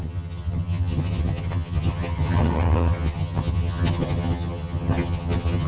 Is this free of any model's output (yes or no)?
no